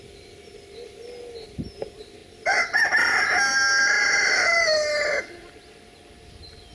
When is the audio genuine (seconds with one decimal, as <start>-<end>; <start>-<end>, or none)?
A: 0.0-6.7